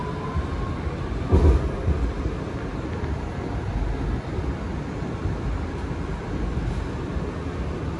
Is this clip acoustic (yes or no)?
yes